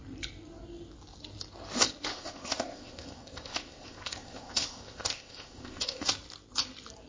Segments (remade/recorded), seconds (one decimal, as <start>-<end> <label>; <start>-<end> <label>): 0.0-2.1 recorded; 2.1-6.1 remade; 6.1-7.1 recorded